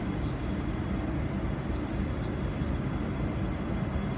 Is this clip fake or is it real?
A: real